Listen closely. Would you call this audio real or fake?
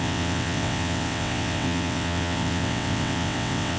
fake